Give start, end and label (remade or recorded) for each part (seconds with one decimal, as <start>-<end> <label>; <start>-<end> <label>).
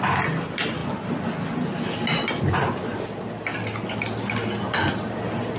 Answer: 0.0-5.6 recorded